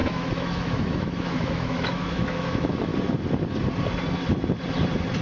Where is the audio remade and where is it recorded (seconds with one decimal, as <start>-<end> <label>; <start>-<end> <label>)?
0.0-2.9 remade; 2.9-5.2 recorded